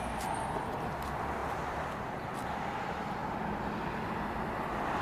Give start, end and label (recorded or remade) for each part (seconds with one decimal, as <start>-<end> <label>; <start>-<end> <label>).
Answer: 0.0-1.4 recorded; 1.4-2.1 remade; 2.1-5.0 recorded